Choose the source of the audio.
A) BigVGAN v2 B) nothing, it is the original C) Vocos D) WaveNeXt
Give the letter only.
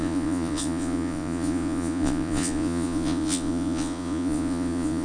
C